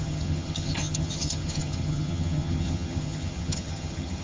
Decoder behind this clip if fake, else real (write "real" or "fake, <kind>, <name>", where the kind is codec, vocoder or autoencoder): fake, vocoder, HiFi-GAN